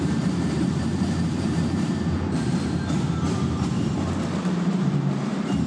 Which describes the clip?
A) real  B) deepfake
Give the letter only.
B